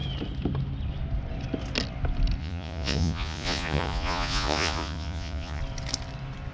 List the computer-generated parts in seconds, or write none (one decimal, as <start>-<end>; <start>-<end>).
2.4-5.6